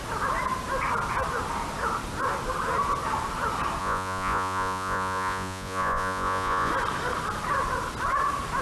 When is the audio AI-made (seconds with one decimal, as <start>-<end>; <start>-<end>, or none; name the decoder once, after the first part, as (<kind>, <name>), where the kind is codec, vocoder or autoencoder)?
3.8-6.7 (vocoder, Vocos)

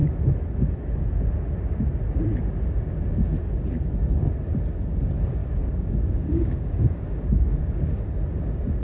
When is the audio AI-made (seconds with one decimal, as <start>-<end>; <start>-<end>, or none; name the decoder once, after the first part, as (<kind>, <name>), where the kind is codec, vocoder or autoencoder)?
5.4-8.1 (codec, DAC)

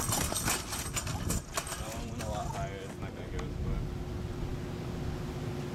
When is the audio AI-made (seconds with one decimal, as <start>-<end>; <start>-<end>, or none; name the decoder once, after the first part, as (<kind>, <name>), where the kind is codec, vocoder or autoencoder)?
1.7-2.5 (vocoder, BigVGAN v2)

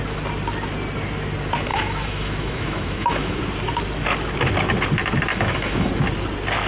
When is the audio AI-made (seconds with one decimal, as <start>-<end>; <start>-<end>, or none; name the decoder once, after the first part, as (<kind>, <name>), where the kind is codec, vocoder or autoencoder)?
1.7-3.4 (autoencoder, DAC-VAE); 5.3-5.9